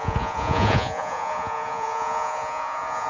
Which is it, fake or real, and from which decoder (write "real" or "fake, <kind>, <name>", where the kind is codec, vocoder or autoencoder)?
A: fake, vocoder, Vocos